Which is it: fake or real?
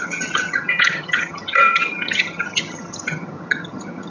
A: fake